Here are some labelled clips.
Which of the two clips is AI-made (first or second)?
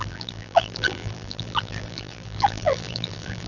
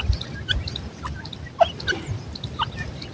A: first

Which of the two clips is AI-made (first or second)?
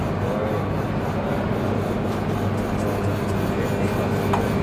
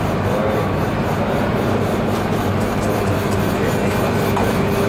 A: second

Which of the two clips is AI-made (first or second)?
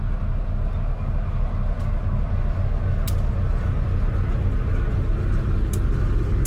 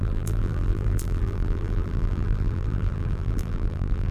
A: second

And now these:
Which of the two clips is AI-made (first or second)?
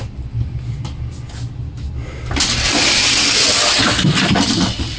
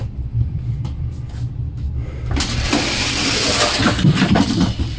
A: second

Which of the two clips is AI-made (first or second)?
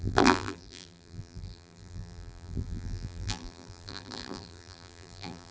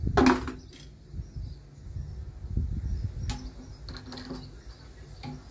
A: first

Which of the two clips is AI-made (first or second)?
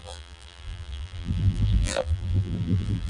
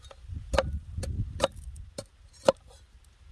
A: first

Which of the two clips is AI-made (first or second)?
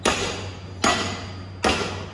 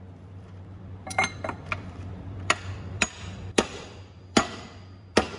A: second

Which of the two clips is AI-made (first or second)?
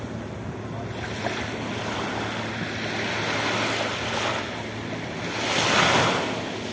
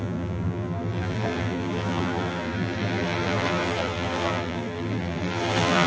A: second